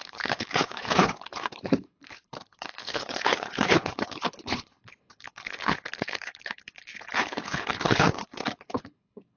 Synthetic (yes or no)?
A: yes